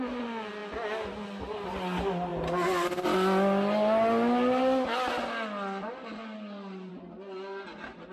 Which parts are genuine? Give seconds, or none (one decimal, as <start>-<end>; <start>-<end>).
0.0-8.1